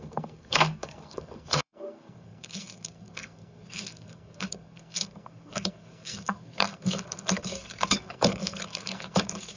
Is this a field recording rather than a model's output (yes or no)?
no